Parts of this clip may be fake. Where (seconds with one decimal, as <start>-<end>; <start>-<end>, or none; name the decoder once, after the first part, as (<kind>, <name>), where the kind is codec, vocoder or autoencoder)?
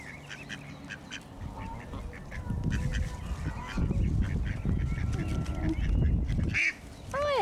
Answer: none